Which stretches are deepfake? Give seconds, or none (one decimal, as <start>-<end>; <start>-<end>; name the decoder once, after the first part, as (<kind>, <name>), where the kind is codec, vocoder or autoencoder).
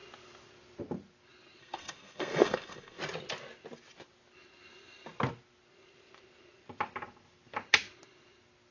1.6-3.0 (codec, SNAC)